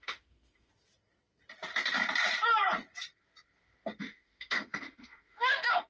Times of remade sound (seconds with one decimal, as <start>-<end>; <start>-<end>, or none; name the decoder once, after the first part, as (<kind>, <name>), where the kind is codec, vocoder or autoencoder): 0.0-0.7 (autoencoder, DAC-VAE); 4.0-5.9